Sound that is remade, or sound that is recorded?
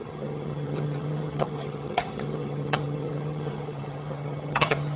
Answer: remade